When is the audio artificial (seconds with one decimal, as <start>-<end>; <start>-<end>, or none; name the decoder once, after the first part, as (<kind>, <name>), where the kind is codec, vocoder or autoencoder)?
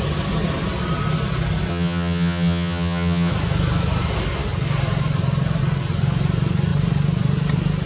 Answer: 1.7-3.3 (vocoder, HiFi-GAN)